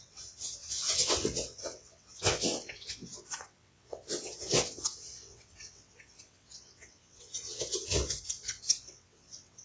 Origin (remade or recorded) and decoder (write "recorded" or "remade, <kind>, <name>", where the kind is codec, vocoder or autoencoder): remade, vocoder, WaveNeXt